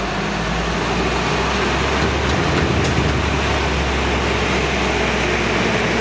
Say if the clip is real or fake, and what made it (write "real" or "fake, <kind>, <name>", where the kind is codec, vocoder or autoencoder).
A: real